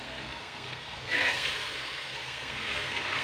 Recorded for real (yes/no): no